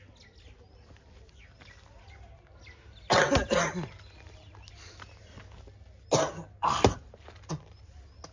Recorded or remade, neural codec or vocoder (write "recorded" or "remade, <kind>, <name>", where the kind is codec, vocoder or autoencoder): recorded